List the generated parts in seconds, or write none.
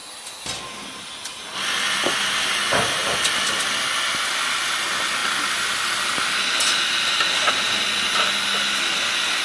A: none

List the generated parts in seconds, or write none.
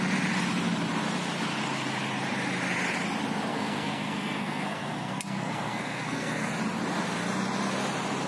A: 3.5-6.5 (codec, SNAC)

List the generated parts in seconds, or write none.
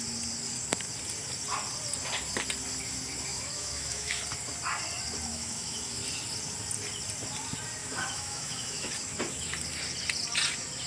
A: 3.3-4.2 (autoencoder, DAC-VAE); 5.3-6.0; 7.8-8.9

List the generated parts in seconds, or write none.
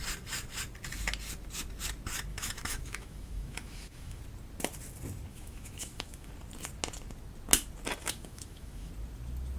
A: 2.3-4.2 (autoencoder, DAC-VAE); 5.3-6.3; 8.0-8.9